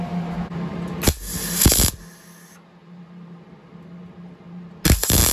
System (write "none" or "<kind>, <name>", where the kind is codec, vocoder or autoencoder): none